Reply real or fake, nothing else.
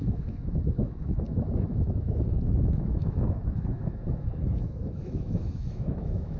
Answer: fake